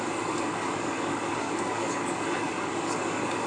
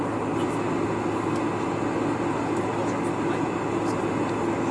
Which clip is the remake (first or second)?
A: first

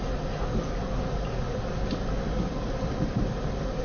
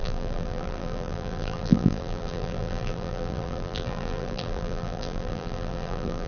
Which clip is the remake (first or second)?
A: second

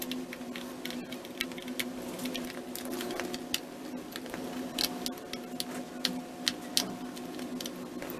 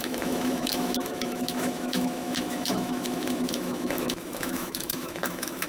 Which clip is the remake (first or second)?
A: second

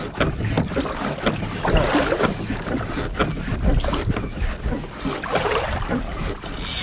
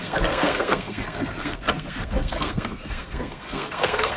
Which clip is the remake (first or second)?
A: second